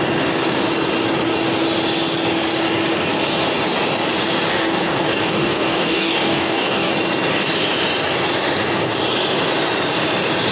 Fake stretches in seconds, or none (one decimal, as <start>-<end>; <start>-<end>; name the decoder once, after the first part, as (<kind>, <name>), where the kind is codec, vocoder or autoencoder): 4.5-6.9 (codec, DAC)